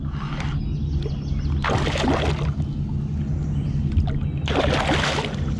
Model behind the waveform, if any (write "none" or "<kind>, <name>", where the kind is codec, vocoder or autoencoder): none